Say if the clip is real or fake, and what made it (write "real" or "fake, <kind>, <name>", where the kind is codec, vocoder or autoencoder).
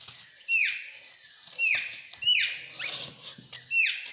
real